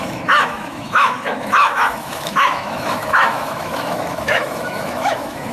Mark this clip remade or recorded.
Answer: remade